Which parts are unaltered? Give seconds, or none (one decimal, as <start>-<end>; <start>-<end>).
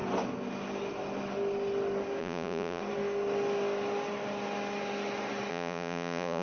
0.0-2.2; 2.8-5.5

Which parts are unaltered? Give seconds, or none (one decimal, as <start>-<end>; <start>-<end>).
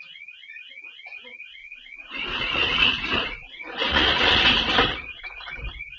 0.0-1.6; 4.4-4.9; 5.4-6.0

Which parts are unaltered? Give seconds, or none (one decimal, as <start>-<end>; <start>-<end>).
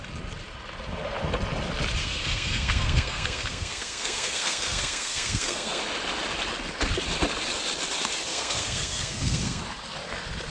0.0-2.0; 5.8-8.3; 9.6-10.5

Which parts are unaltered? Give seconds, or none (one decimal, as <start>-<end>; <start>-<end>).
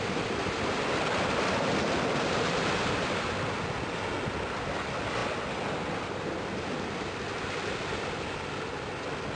0.0-9.4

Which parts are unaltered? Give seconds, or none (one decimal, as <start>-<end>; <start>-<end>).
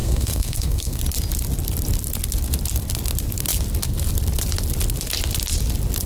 1.0-6.1